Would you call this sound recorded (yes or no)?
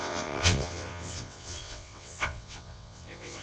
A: no